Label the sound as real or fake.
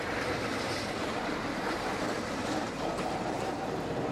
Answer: fake